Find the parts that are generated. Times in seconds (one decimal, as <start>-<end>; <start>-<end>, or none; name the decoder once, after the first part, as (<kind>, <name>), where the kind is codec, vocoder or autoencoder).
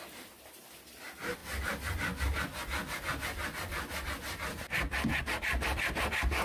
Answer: none